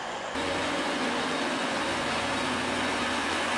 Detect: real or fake fake